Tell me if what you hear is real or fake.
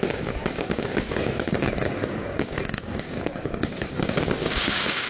fake